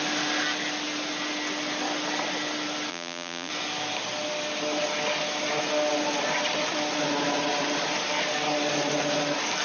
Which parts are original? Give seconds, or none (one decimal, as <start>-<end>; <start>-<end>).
0.0-2.9; 3.5-9.6